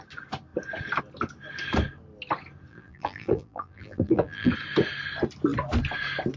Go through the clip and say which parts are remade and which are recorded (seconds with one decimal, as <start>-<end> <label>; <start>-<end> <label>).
0.0-2.7 recorded; 2.7-4.5 remade; 4.5-6.4 recorded